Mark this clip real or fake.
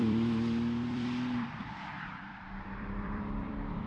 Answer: fake